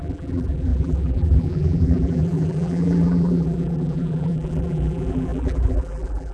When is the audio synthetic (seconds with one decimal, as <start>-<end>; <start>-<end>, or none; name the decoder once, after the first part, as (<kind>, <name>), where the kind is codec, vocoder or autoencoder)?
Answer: 0.0-6.3 (vocoder, BigVGAN v2)